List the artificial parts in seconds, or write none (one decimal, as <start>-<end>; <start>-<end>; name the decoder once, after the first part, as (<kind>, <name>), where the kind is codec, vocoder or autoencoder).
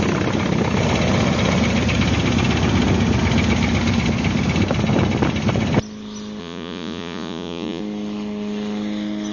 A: 6.4-7.8 (vocoder, Vocos)